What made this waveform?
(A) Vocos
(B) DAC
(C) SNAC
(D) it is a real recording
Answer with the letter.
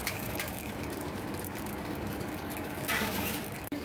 B